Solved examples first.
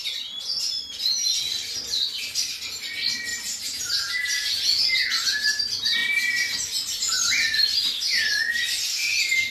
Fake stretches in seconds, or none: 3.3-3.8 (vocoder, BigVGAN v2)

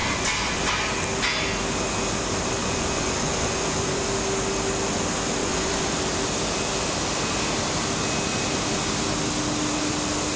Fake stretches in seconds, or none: 0.0-0.7 (vocoder, Vocos); 2.6-4.1; 5.4-6.1

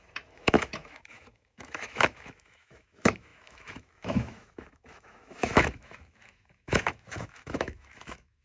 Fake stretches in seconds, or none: 0.0-8.4 (autoencoder, DAC-VAE)

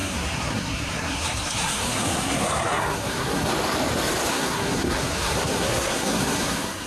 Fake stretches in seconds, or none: 0.0-3.5 (codec, SNAC); 4.3-6.9